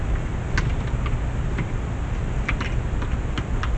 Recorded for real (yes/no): yes